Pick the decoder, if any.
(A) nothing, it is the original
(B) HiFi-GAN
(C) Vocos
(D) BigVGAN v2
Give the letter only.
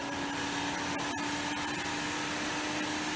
A